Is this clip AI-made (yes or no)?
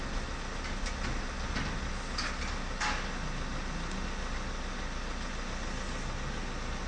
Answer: no